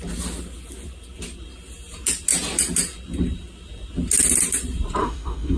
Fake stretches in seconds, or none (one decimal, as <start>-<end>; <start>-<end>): 5.0-5.6